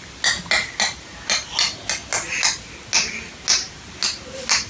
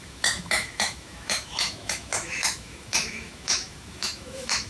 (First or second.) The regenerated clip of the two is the second